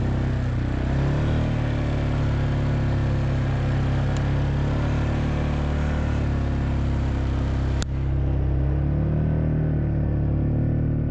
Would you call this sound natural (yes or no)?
yes